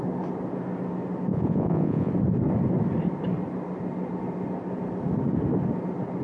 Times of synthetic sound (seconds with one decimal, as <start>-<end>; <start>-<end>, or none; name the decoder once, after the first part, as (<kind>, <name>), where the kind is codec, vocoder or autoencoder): 1.3-2.1 (vocoder, Vocos)